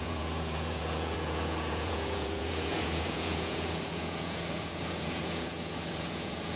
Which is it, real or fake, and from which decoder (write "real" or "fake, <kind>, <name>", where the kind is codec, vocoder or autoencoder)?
fake, vocoder, Vocos